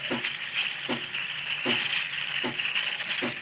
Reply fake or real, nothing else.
real